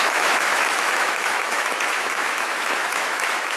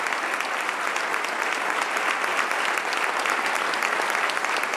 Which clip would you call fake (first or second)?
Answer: first